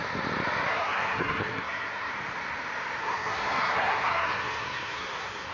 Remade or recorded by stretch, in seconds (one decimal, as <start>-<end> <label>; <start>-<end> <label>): 0.0-0.7 recorded; 0.7-2.1 remade; 2.1-3.0 recorded; 3.0-5.5 remade